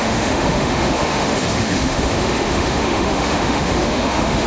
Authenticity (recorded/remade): remade